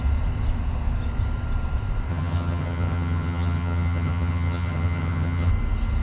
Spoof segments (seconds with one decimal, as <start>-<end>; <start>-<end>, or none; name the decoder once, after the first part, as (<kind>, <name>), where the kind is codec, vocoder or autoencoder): 2.1-5.5 (vocoder, HiFi-GAN)